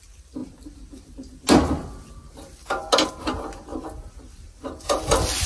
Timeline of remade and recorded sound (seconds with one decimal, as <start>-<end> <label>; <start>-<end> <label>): 0.0-5.5 recorded